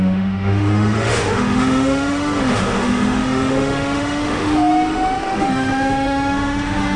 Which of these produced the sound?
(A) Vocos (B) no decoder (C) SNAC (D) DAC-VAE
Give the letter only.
D